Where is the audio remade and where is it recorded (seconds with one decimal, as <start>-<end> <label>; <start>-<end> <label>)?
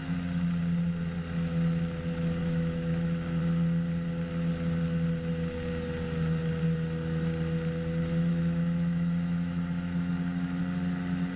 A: 0.0-2.4 recorded; 2.4-3.4 remade; 3.4-8.3 recorded; 8.3-10.6 remade; 10.6-11.4 recorded